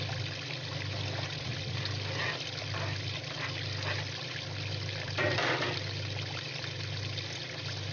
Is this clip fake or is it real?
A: real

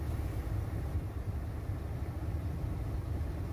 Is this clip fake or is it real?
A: real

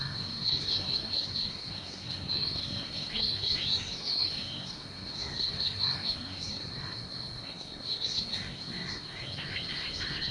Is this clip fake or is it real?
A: fake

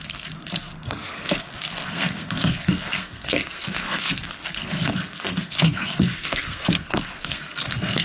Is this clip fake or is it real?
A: fake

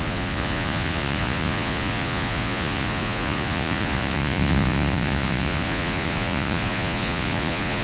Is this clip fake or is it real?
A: fake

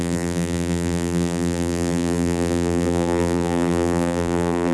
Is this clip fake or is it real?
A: fake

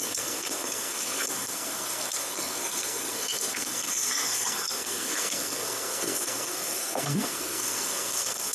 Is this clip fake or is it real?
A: fake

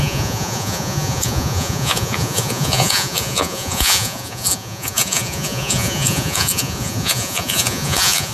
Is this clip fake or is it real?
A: fake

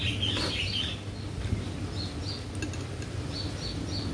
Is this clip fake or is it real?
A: real